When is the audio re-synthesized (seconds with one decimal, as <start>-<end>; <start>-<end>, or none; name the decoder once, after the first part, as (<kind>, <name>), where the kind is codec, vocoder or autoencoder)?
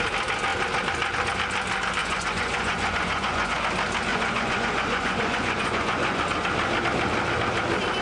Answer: 2.0-3.6 (vocoder, Vocos); 4.1-6.2